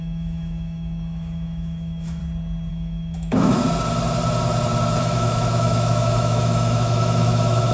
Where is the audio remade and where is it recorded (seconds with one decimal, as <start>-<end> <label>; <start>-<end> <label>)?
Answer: 0.0-2.2 remade; 2.2-2.7 recorded; 2.7-3.6 remade; 3.6-5.0 recorded; 5.0-7.7 remade